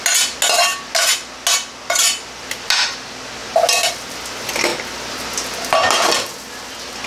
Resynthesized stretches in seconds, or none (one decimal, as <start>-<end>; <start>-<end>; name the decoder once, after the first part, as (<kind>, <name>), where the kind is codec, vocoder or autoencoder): none